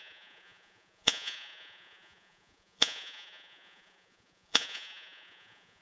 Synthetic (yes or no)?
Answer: yes